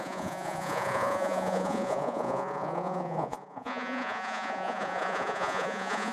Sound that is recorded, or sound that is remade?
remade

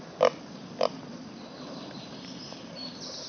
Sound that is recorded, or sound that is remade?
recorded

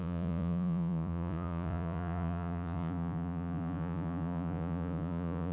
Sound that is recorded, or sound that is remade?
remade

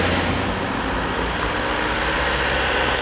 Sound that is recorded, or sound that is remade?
recorded